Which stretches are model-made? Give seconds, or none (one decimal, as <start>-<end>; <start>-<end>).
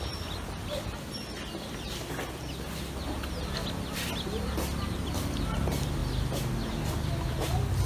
none